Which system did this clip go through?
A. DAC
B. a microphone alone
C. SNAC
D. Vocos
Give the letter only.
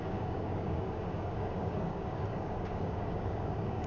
A